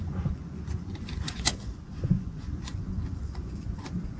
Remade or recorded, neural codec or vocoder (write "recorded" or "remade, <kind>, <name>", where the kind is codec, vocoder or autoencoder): remade, vocoder, Vocos